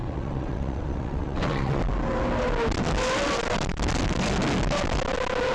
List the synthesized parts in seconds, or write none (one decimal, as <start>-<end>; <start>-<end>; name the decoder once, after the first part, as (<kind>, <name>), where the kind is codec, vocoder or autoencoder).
0.0-1.8 (vocoder, WaveNeXt)